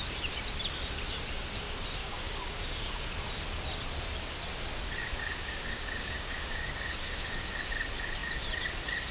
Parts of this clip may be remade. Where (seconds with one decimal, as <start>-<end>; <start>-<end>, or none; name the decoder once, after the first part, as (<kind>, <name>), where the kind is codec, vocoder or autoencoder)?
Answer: 2.0-3.1 (codec, DAC); 5.0-7.5